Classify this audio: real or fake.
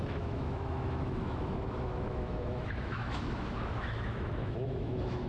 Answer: fake